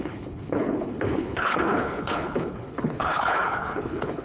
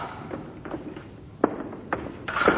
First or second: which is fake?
first